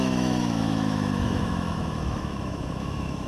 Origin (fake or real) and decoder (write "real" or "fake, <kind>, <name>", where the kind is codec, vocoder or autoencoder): fake, autoencoder, DAC-VAE